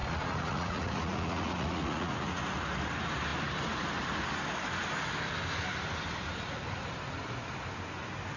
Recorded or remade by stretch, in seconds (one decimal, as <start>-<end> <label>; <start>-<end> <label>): 0.0-2.4 remade; 2.4-8.4 recorded